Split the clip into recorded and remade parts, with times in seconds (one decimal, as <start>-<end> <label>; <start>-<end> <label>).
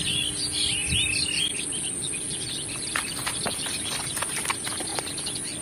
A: 0.0-5.6 recorded